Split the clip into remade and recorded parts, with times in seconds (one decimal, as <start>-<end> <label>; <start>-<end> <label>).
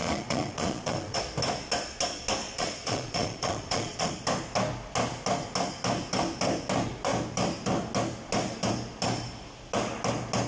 0.0-1.2 remade; 1.2-2.4 recorded; 2.4-4.1 remade; 4.1-10.5 recorded